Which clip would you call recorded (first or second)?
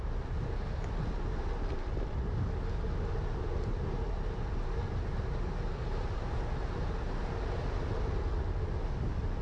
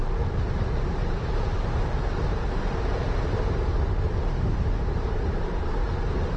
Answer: first